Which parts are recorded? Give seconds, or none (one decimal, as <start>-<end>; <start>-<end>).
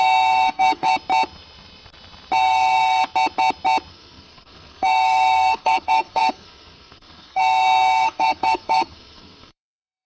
0.9-2.4; 3.0-3.9